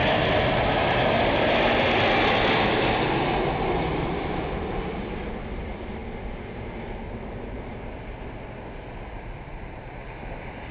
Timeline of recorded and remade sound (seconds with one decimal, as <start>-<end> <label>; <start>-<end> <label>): 0.0-10.7 recorded